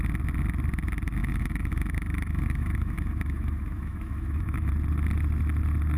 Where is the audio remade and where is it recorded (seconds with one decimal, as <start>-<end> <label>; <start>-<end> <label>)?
0.0-1.2 recorded; 1.2-4.7 remade; 4.7-6.0 recorded